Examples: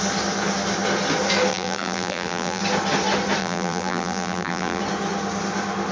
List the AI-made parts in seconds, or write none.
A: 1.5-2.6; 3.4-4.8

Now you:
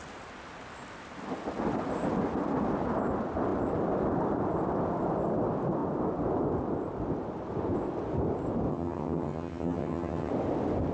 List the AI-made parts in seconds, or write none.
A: 8.7-10.3

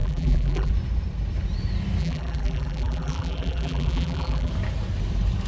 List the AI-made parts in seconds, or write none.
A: 0.0-0.7; 2.0-4.5

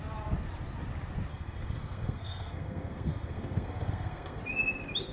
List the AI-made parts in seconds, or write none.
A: 1.3-4.4

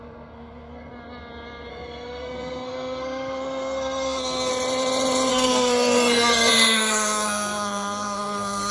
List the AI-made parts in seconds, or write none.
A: 0.0-0.9; 1.7-4.5; 5.3-8.7

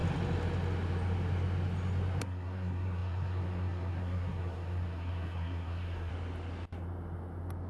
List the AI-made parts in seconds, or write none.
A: 2.2-6.1

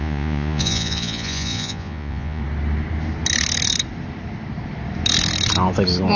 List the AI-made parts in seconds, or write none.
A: 0.0-2.4

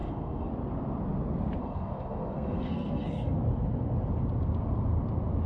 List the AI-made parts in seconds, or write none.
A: 0.0-0.5; 1.6-3.4